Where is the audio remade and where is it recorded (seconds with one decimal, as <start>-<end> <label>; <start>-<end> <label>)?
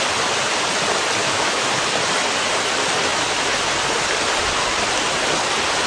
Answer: 0.0-1.2 recorded; 1.2-1.7 remade; 1.7-5.9 recorded